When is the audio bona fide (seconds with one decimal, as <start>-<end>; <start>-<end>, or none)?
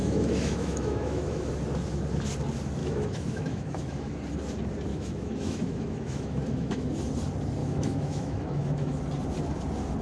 1.5-2.8; 4.1-4.9; 6.9-7.6; 9.0-10.0